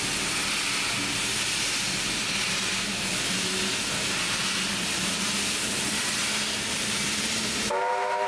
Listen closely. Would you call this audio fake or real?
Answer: real